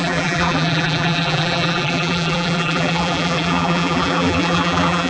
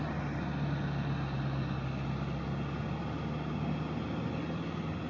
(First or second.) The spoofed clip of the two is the first